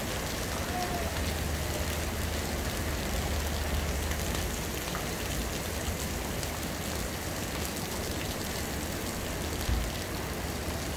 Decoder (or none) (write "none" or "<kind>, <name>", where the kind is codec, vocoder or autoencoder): none